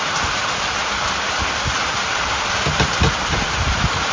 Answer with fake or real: real